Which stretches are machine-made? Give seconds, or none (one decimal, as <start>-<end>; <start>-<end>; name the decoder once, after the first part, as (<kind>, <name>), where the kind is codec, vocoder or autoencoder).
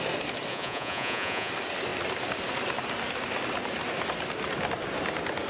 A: 0.5-1.5 (vocoder, Vocos)